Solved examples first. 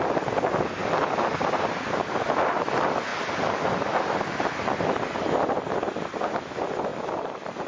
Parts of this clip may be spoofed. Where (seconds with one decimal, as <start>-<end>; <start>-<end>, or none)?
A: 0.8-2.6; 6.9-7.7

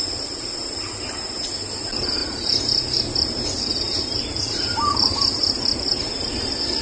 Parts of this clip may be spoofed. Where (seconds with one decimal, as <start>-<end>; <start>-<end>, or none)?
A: 2.2-6.1

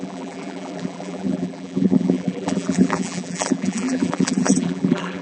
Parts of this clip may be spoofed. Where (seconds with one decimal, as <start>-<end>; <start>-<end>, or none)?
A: 0.0-5.2

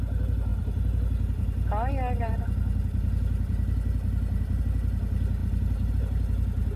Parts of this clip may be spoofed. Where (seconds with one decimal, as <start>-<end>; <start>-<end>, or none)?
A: none

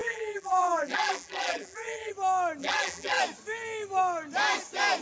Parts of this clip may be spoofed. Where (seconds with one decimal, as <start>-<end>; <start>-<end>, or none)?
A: 0.0-2.1; 2.6-3.2